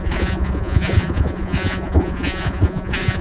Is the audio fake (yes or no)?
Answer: yes